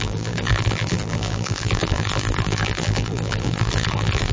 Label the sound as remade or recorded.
remade